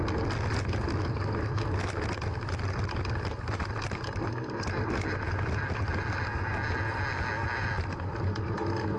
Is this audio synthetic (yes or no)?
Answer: no